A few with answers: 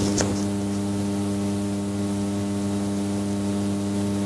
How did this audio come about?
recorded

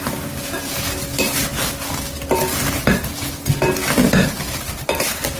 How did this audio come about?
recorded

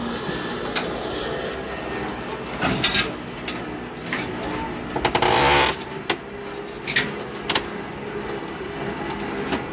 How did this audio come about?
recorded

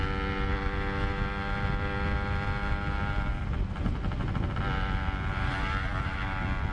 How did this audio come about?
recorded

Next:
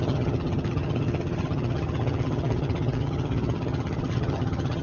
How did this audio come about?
remade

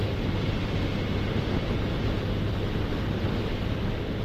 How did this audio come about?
recorded